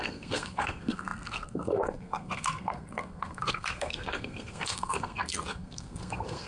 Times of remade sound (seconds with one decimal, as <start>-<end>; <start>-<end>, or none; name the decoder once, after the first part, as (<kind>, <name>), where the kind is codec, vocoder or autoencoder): 0.0-6.5 (codec, SNAC)